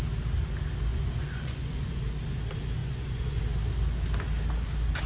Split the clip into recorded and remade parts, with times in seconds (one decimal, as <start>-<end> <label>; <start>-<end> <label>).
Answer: 0.0-0.9 recorded; 0.9-2.0 remade; 2.0-2.8 recorded; 2.8-3.4 remade; 3.4-5.1 recorded